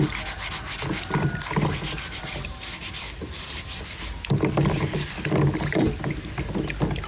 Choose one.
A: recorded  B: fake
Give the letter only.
A